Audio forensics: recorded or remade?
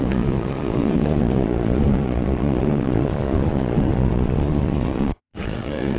remade